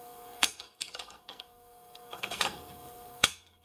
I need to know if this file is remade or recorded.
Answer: remade